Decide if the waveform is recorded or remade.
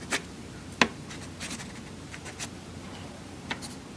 recorded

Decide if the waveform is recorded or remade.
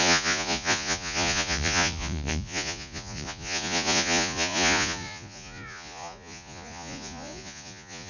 remade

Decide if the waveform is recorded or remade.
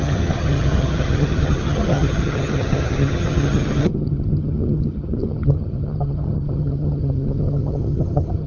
remade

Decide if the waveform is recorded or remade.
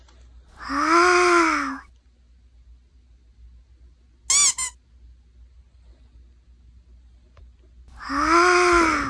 recorded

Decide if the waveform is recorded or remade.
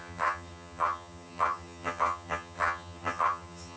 remade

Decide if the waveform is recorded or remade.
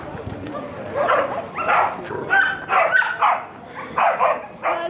recorded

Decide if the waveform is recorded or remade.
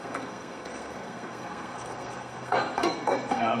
remade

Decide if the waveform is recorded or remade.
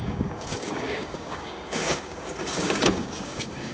remade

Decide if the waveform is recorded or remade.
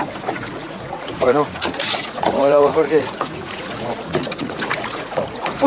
remade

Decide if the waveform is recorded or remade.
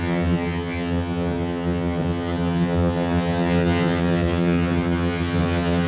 remade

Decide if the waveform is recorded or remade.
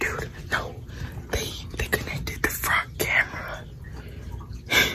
recorded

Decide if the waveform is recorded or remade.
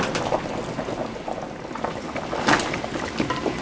recorded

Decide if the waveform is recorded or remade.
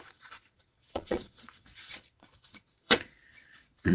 remade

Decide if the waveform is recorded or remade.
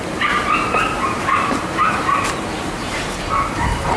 remade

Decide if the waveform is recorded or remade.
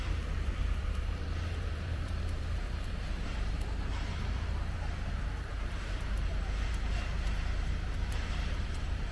remade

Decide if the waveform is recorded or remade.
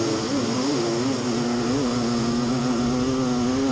recorded